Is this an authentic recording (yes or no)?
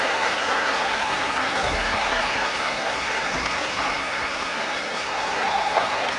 no